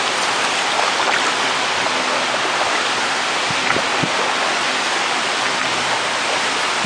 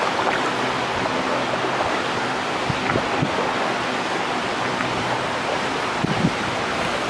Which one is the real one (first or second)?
second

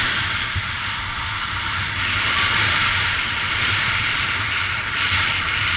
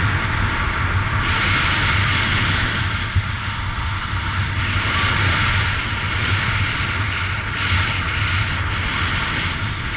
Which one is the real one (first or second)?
second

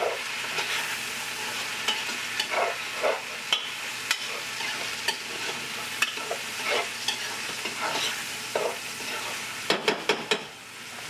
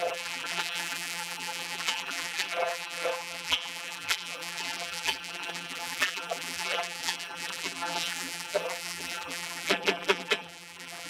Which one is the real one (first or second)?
first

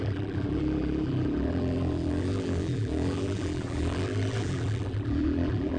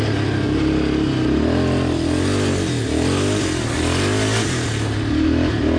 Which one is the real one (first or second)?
second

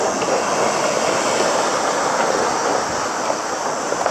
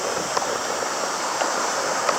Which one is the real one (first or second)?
first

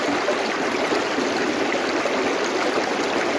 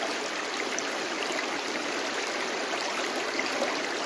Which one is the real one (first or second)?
first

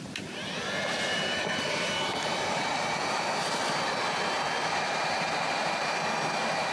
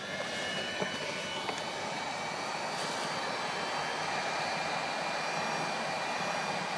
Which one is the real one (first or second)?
second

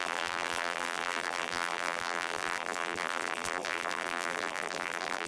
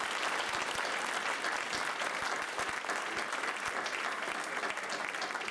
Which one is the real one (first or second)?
second